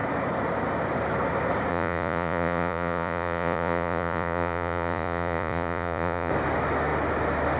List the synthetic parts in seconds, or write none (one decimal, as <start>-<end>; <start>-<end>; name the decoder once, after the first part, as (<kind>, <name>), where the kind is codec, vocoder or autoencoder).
1.7-6.3 (vocoder, Vocos)